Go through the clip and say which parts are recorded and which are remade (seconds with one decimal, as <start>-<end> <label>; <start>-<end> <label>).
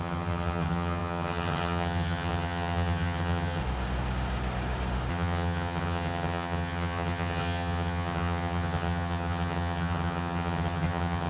0.0-3.6 remade; 3.6-5.1 recorded; 5.1-11.3 remade